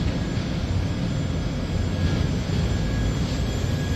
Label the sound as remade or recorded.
recorded